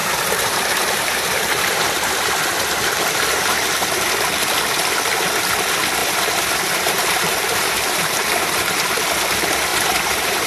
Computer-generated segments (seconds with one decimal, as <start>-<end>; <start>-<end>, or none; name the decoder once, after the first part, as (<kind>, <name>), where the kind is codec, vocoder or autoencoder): 0.0-4.1 (vocoder, BigVGAN v2); 6.0-8.9; 9.7-10.5